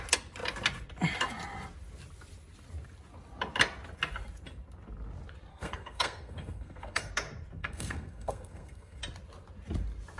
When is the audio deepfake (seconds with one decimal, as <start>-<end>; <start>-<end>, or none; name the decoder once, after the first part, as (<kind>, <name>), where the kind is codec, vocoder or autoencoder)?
5.5-7.1 (codec, SNAC); 7.6-9.0